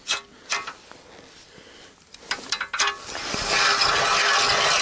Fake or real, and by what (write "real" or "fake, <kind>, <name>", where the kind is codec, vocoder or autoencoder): real